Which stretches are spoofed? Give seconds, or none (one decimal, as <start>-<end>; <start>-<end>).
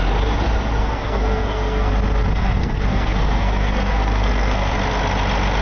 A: 0.8-1.9; 2.3-4.7